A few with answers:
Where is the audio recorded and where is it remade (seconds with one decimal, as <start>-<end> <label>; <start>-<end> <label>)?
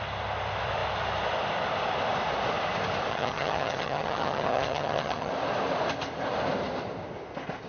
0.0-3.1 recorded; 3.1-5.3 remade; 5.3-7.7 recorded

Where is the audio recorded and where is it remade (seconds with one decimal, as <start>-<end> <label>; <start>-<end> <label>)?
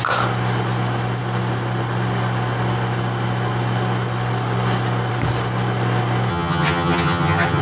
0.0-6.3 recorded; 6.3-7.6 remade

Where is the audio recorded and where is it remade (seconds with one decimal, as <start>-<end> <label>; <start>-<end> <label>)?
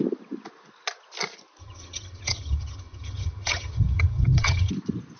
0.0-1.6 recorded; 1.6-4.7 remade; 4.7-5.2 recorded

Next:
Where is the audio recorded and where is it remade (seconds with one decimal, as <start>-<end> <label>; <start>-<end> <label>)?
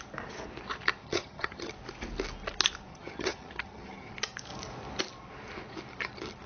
0.0-1.0 recorded; 1.0-1.7 remade; 1.7-2.9 recorded; 2.9-4.1 remade; 4.1-6.5 recorded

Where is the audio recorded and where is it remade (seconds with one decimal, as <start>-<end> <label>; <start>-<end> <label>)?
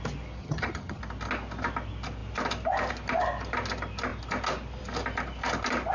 0.0-0.4 recorded; 0.4-1.0 remade; 1.0-5.9 recorded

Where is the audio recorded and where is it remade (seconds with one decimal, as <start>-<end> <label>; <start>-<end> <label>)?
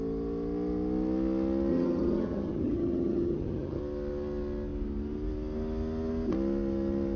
0.0-1.7 recorded; 1.7-3.8 remade; 3.8-7.2 recorded